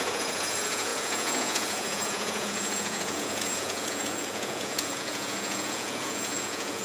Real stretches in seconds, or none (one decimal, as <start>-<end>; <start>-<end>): none